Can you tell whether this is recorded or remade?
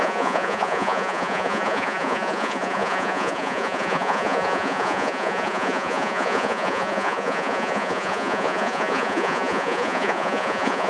remade